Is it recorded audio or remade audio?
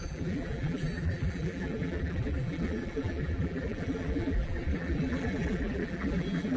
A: remade